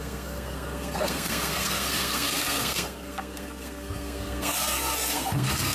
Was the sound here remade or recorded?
remade